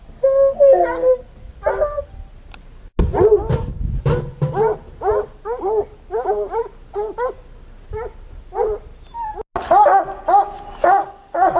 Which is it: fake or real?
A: real